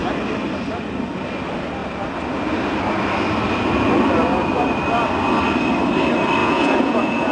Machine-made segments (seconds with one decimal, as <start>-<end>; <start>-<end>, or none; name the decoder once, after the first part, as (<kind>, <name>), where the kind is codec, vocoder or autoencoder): 6.4-7.3 (vocoder, Vocos)